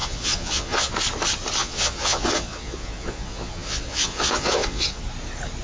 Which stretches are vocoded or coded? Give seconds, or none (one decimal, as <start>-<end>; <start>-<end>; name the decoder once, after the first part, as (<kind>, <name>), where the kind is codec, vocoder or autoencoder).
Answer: 0.0-0.9 (vocoder, Vocos); 1.6-5.0